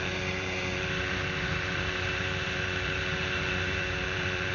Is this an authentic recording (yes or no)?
no